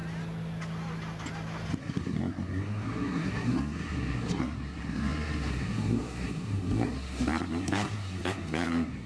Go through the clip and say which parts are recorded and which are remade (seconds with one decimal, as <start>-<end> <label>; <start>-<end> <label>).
0.0-1.8 recorded; 1.8-9.1 remade